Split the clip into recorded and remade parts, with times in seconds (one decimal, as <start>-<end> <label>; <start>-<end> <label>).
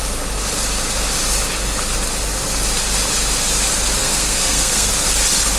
0.0-4.0 recorded; 4.0-4.9 remade; 4.9-5.6 recorded